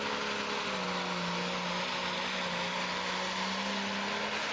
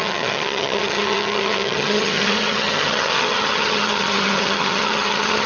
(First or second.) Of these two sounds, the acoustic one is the first